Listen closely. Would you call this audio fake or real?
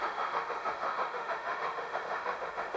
fake